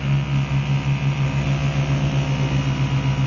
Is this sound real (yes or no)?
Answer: yes